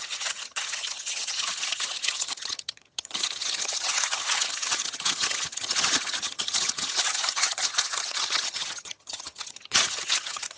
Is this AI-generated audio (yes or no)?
yes